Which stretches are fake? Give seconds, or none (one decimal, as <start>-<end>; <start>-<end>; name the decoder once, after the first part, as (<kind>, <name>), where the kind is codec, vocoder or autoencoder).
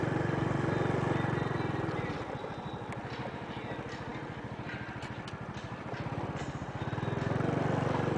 4.1-5.8 (vocoder, BigVGAN v2)